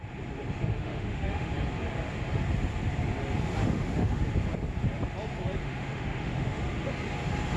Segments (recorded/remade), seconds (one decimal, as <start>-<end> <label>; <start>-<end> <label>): 0.0-0.7 recorded; 0.7-1.5 remade; 1.5-3.6 recorded; 3.6-4.2 remade; 4.2-5.6 recorded; 5.6-6.6 remade; 6.6-7.6 recorded